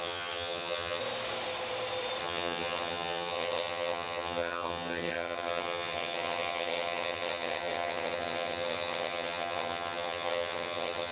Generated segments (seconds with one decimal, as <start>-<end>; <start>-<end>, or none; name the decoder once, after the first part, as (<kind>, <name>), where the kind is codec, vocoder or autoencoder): 0.0-1.0 (vocoder, HiFi-GAN); 2.2-11.1